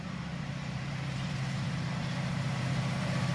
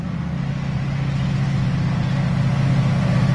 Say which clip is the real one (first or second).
second